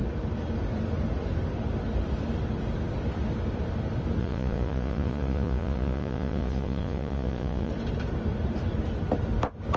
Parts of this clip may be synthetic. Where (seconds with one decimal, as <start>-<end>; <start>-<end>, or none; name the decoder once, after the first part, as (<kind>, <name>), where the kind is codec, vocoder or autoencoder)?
4.2-7.7 (vocoder, Vocos)